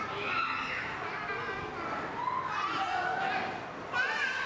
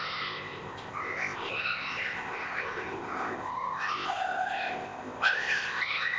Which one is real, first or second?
first